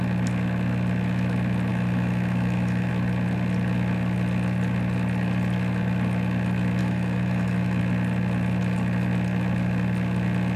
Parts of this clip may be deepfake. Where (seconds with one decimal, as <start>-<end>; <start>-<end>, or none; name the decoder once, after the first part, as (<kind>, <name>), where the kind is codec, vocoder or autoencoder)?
1.7-2.9 (autoencoder, DAC-VAE); 6.8-7.8